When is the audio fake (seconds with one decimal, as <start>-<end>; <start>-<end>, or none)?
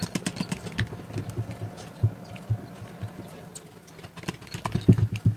none